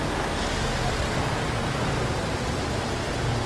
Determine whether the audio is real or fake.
real